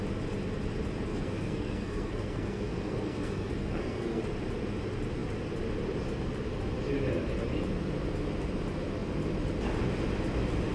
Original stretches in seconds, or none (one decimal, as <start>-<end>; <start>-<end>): 0.0-1.1; 4.2-10.7